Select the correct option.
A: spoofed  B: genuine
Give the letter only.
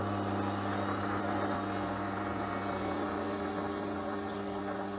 B